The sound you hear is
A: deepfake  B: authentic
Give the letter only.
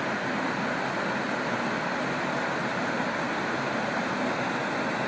B